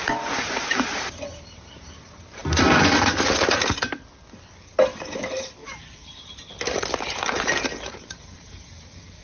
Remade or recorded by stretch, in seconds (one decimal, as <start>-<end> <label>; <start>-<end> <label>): 0.0-2.4 remade; 2.4-4.9 recorded; 4.9-5.6 remade; 5.6-7.9 recorded; 7.9-9.2 remade